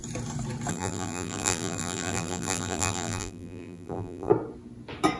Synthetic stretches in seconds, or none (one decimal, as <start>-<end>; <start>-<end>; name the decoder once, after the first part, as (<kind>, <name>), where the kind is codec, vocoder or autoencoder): 0.7-4.3 (vocoder, BigVGAN v2)